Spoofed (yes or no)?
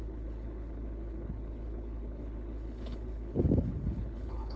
yes